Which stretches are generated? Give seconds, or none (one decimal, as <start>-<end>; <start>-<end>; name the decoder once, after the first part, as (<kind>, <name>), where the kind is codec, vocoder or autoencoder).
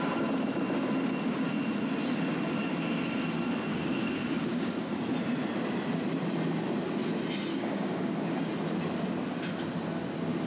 3.7-4.9 (codec, DAC); 7.5-8.5